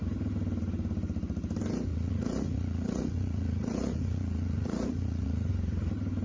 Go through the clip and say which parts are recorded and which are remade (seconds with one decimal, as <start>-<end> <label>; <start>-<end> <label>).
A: 0.0-1.9 recorded; 1.9-5.5 remade; 5.5-6.2 recorded